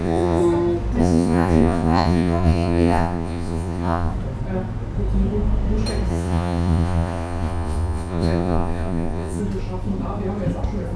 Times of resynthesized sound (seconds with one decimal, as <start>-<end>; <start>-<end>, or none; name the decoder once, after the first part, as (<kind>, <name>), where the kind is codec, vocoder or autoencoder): 0.0-0.4 (vocoder, Vocos); 1.0-4.1; 6.1-9.4